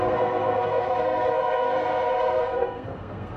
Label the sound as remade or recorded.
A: remade